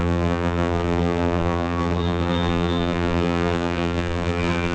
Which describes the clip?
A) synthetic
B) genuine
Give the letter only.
A